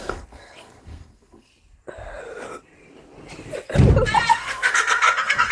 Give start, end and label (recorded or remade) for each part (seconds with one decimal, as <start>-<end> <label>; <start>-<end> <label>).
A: 0.0-1.5 remade; 1.5-4.3 recorded; 4.3-5.5 remade

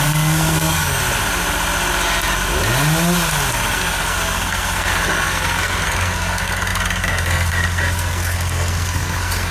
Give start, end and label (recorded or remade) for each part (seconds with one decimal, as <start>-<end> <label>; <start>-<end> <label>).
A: 0.0-1.0 remade; 1.0-3.5 recorded; 3.5-9.5 remade

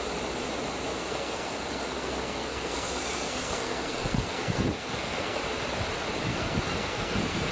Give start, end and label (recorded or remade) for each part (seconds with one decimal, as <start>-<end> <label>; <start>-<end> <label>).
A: 0.0-0.9 recorded; 0.9-5.4 remade; 5.4-6.3 recorded; 6.3-7.5 remade

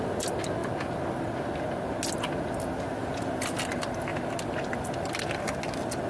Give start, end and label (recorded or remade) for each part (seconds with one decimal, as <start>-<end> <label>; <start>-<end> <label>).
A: 0.0-6.1 recorded

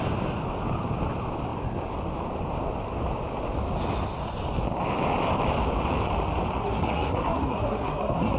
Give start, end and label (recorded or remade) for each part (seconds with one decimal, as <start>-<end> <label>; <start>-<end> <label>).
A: 0.0-6.6 recorded; 6.6-8.4 remade

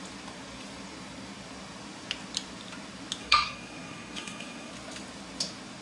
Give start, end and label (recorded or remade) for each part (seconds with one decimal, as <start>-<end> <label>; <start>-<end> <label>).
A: 0.0-3.2 recorded; 3.2-4.7 remade; 4.7-5.8 recorded

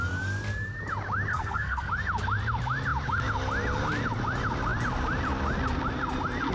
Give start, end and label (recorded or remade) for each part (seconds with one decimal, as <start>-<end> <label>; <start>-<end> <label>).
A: 0.0-1.3 recorded; 1.3-1.9 remade; 1.9-6.5 recorded